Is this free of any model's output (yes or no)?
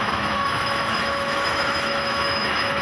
no